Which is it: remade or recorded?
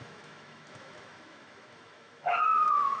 remade